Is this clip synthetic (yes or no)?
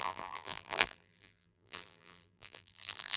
yes